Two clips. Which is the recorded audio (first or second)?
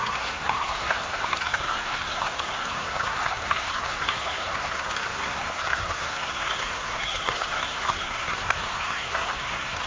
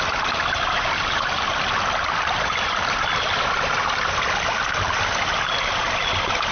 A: second